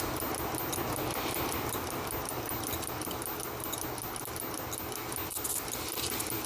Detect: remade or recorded recorded